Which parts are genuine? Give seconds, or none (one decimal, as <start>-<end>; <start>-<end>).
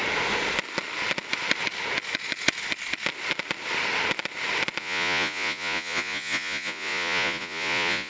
0.0-4.8